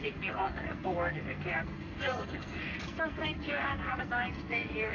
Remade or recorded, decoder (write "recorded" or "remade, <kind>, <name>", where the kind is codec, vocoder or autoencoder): remade, codec, SNAC